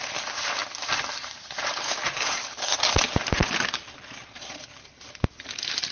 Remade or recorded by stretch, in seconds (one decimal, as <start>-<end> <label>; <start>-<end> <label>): 0.0-0.6 remade; 0.6-1.2 recorded; 1.2-5.9 remade